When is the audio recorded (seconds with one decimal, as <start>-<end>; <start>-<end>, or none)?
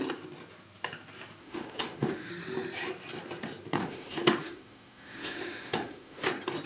0.0-1.4; 2.3-3.8; 6.3-6.7